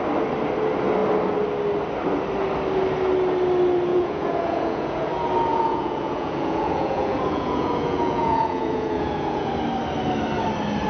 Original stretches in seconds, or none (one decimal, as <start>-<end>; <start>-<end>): 0.0-3.9; 5.1-5.5; 9.5-10.9